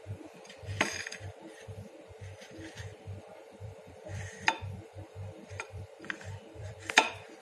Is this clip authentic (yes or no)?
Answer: no